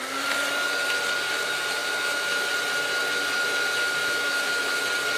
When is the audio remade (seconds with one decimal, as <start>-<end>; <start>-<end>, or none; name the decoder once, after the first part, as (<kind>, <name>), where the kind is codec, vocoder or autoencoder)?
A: 1.8-2.5 (autoencoder, DAC-VAE); 4.0-4.8